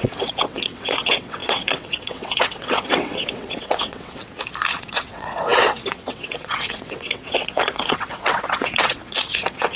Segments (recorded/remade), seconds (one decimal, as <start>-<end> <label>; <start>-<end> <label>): 0.0-4.2 remade; 4.2-4.7 recorded; 4.7-9.8 remade